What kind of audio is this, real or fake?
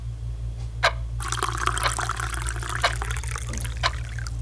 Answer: real